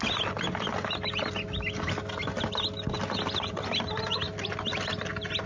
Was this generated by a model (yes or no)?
no